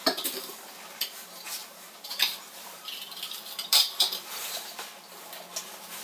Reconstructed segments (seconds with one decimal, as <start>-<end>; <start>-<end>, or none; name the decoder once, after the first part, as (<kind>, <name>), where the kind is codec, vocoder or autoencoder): 0.0-0.7 (vocoder, BigVGAN v2); 1.6-4.7

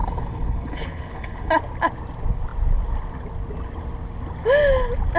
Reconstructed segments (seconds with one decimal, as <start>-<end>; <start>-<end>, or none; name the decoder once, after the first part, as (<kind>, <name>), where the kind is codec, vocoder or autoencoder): 0.0-1.5 (codec, HILCodec)

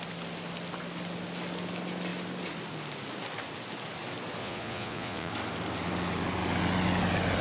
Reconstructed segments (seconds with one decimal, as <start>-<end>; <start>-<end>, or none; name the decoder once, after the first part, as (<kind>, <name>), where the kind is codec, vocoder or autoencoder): 4.4-5.3 (vocoder, Vocos)

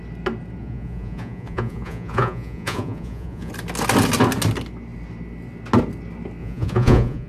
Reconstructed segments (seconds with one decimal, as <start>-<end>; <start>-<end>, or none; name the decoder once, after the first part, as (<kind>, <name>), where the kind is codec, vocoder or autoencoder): 0.6-3.5 (vocoder, Vocos); 6.4-7.3

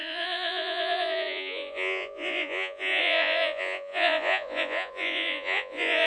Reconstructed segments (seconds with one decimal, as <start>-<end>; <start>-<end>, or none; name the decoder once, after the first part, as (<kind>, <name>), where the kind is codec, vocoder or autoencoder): 0.0-6.1 (vocoder, Vocos)

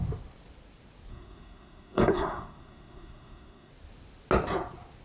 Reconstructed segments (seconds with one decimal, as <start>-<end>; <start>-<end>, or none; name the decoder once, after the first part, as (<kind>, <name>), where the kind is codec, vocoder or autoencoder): 1.1-3.7 (codec, SNAC)